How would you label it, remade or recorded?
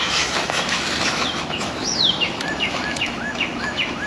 remade